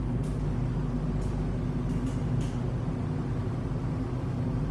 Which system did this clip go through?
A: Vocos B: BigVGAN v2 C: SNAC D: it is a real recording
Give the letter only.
D